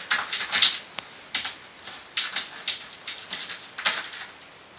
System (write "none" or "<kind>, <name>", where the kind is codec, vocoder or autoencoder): none